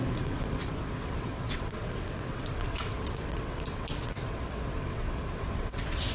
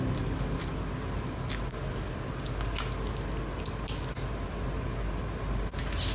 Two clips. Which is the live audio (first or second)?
second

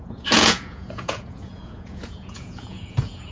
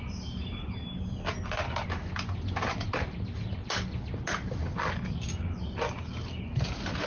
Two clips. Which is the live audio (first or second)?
second